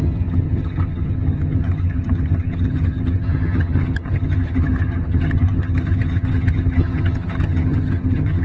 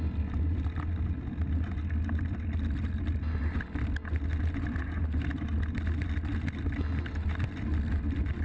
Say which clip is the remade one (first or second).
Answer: first